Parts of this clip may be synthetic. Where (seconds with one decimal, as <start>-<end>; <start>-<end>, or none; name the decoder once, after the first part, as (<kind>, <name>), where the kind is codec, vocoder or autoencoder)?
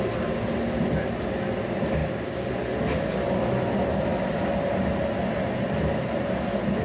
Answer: 2.0-2.5 (vocoder, BigVGAN v2)